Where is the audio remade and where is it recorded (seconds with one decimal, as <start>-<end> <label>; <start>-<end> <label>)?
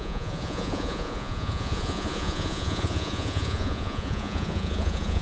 0.0-5.2 remade